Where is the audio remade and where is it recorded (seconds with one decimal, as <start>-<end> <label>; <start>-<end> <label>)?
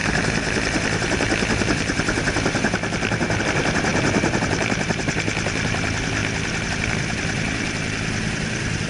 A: 0.0-3.4 recorded; 3.4-6.2 remade; 6.2-6.7 recorded; 6.7-8.9 remade